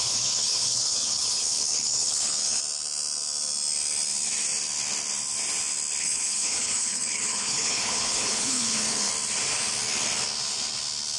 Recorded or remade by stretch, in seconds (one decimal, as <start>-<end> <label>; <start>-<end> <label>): 0.0-2.6 remade; 2.6-6.0 recorded; 6.0-9.1 remade; 9.1-11.2 recorded